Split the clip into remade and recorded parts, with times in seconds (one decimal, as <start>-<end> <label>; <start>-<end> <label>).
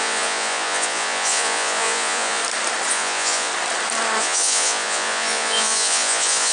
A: 0.0-2.4 remade; 2.4-2.9 recorded; 2.9-3.5 remade; 3.5-4.2 recorded; 4.2-6.5 remade